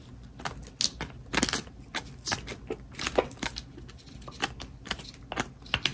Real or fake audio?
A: real